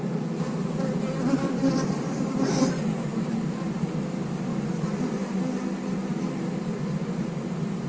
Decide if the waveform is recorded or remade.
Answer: recorded